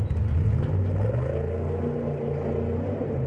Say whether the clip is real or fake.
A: real